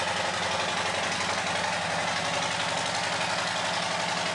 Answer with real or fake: real